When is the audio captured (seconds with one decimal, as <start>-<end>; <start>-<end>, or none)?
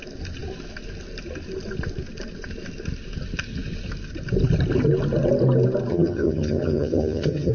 0.0-5.9